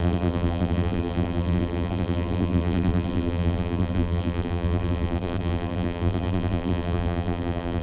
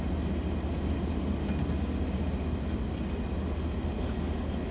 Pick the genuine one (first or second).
second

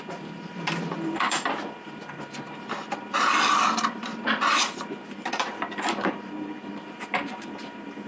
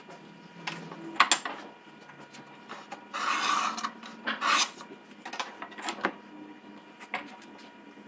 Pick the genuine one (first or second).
second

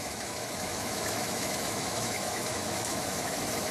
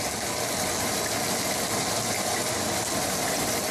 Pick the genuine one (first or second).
second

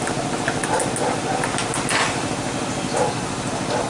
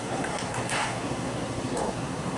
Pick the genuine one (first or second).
first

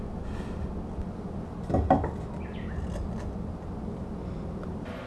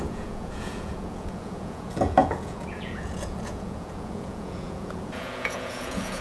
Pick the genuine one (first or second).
first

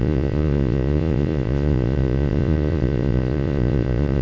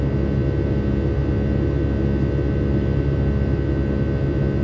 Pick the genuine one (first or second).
second